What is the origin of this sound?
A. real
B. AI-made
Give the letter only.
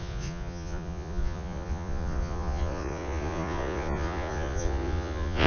B